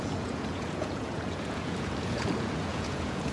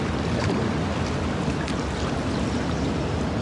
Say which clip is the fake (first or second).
first